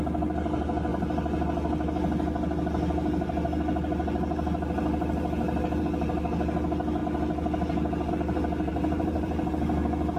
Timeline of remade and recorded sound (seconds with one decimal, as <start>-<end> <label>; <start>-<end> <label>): 0.0-8.7 recorded; 8.7-9.5 remade; 9.5-10.2 recorded